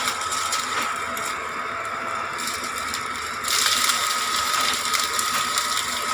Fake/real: fake